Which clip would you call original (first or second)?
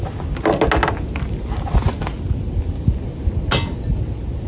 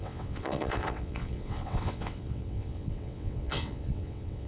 first